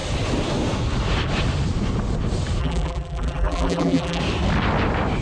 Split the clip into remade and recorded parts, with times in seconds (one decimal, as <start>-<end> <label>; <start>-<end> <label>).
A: 0.0-2.6 recorded; 2.6-4.2 remade; 4.2-5.2 recorded